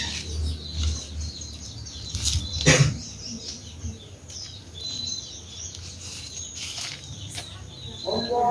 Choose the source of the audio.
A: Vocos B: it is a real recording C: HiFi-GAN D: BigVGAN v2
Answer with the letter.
B